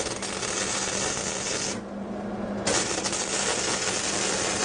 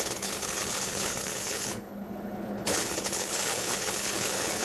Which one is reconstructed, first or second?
second